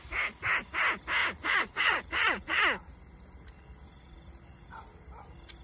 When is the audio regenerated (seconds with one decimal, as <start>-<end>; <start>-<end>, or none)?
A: 1.2-2.6